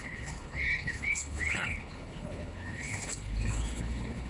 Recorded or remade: remade